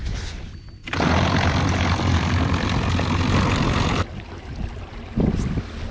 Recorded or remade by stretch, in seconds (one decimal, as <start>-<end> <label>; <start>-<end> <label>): 0.0-5.9 recorded